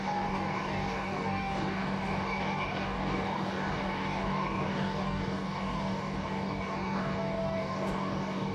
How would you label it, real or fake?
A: fake